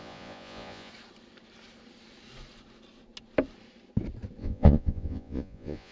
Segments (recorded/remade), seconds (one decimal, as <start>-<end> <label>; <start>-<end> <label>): 0.0-0.9 remade; 0.9-4.4 recorded; 4.4-5.9 remade